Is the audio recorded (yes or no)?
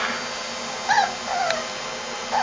yes